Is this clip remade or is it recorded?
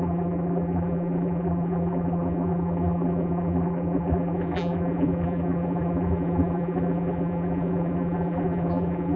remade